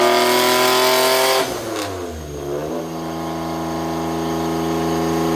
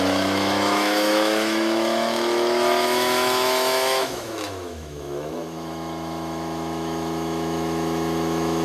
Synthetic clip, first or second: second